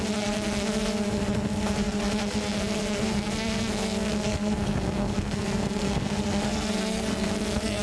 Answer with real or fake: fake